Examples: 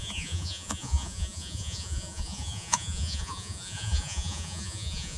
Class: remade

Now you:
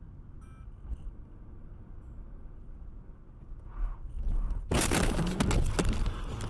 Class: recorded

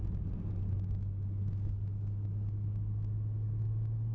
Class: recorded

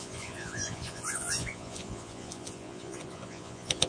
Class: remade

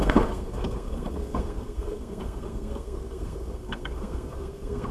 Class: remade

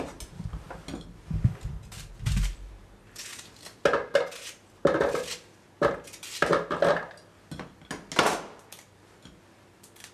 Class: recorded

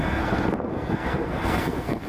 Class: remade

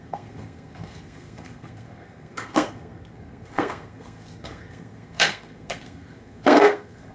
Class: remade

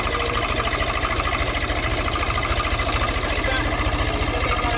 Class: recorded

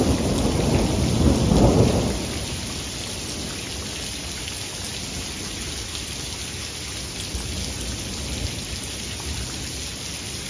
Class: recorded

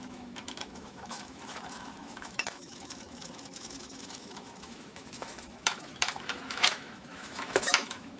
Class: remade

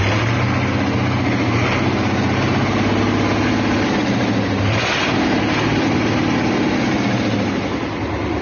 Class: recorded